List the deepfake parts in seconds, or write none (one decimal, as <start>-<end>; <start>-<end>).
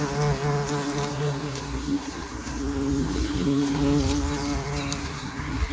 1.1-2.6; 3.0-3.8; 5.0-5.7